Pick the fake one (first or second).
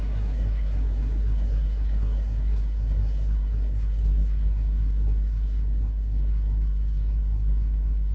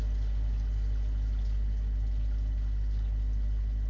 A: first